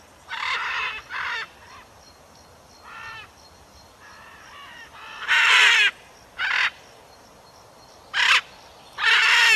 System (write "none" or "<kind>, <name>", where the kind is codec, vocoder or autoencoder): vocoder, BigVGAN v2